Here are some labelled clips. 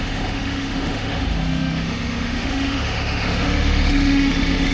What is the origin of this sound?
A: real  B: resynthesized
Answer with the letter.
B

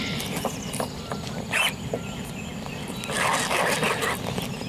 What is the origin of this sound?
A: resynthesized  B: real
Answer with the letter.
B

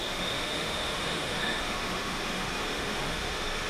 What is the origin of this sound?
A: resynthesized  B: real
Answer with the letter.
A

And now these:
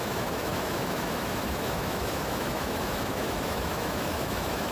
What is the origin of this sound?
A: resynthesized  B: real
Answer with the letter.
A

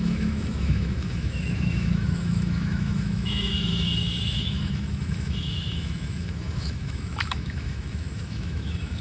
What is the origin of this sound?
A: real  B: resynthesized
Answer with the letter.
B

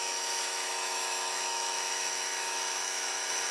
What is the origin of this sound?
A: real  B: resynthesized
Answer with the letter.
B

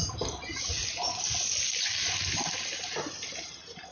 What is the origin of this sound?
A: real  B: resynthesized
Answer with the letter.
A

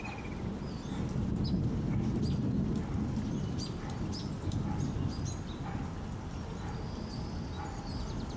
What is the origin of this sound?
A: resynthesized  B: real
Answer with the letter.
B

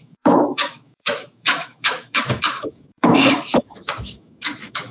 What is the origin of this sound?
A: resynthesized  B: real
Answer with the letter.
A